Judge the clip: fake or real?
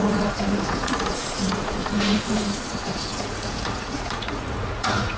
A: fake